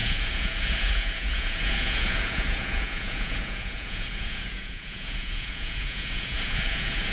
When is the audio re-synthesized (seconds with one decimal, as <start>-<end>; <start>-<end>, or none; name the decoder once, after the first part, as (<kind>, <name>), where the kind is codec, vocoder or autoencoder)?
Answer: 0.0-7.1 (vocoder, Vocos)